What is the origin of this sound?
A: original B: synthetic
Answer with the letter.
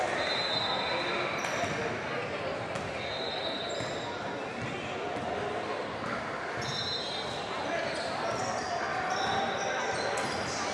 A